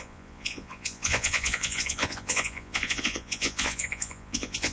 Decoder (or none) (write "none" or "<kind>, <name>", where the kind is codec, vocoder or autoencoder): vocoder, Vocos